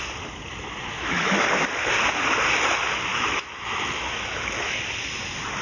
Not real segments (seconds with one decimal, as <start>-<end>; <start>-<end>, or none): 0.9-1.4; 3.1-4.8